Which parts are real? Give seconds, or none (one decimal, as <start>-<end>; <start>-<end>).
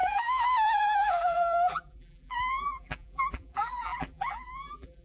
none